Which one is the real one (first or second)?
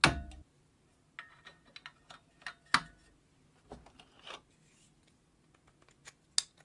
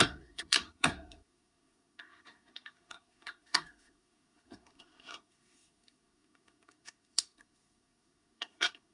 first